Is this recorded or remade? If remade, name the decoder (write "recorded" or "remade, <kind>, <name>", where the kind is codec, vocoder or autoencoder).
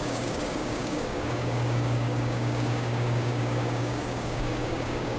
remade, codec, DAC